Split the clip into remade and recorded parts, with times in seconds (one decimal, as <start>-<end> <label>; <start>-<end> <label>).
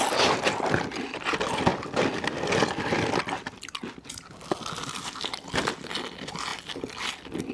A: 0.0-7.5 recorded